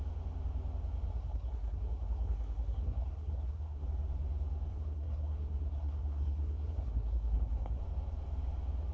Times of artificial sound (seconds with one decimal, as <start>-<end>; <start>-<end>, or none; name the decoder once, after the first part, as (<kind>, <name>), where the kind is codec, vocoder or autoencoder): 1.1-3.8 (codec, SNAC); 4.7-7.8